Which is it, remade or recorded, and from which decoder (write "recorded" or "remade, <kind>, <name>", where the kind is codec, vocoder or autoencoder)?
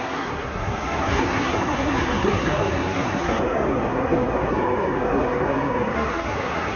remade, codec, SNAC